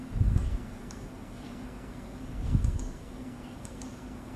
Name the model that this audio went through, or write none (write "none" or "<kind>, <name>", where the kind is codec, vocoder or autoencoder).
codec, SNAC